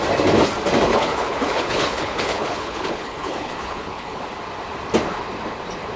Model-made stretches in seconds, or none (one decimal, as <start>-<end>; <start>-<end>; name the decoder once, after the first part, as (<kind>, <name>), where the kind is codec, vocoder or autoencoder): 0.9-4.2 (codec, HILCodec)